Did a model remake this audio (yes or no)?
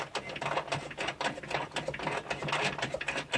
no